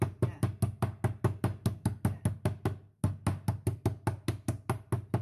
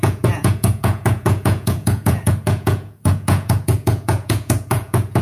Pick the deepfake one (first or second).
second